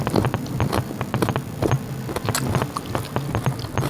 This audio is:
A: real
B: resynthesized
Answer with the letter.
A